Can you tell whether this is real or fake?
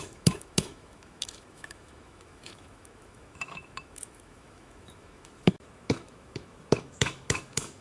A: fake